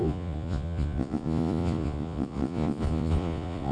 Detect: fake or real fake